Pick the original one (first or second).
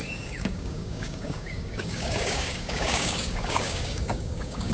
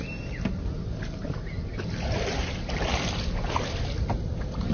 second